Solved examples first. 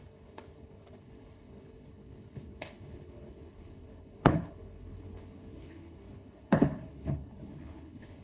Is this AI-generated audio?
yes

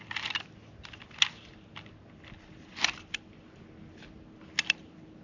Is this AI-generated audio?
no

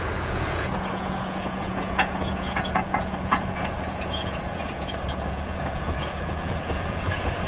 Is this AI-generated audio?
yes